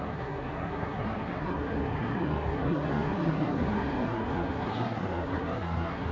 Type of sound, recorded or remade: remade